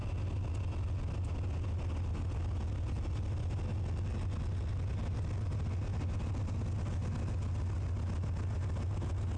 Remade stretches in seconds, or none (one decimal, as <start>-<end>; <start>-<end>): none